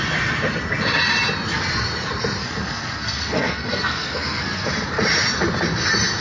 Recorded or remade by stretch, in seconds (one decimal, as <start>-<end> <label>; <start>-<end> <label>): 0.0-2.4 recorded; 2.4-4.7 remade; 4.7-6.2 recorded